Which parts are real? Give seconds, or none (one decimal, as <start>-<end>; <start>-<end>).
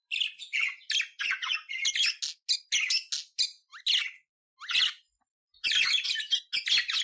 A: 0.0-7.0